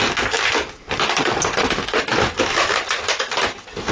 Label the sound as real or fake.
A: real